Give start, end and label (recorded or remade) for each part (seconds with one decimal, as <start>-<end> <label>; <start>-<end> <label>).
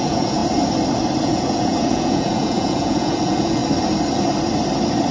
0.0-0.4 remade; 0.4-1.2 recorded; 1.2-3.6 remade; 3.6-5.1 recorded